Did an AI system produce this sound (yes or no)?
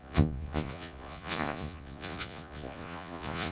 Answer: yes